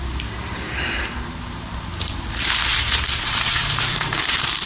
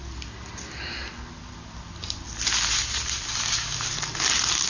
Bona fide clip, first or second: second